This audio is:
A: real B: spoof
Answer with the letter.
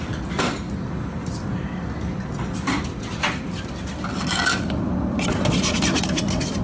A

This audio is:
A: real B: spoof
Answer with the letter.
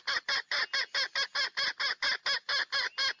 A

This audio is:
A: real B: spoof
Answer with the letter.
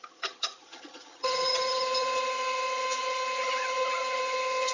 B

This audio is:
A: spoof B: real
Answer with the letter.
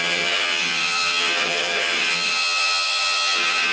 A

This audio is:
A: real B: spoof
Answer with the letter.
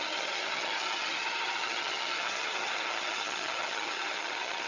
B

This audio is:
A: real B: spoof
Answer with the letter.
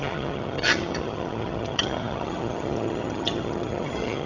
B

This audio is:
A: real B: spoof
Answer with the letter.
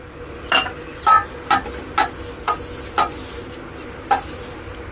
A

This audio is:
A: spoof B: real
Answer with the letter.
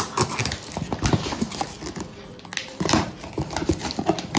B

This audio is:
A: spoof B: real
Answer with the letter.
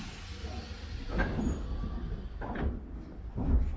B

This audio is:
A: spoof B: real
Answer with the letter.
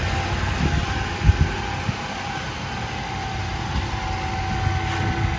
B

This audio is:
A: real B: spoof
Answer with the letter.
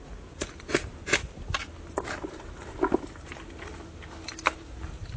A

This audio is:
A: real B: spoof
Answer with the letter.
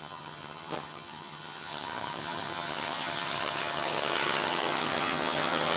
B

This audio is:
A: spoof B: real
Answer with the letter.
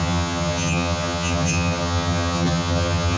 A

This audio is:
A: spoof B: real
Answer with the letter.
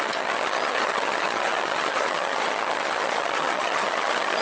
A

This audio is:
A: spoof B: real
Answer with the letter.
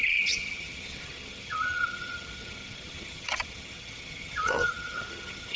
A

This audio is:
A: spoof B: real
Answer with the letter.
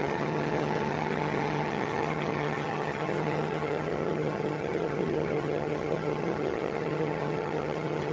A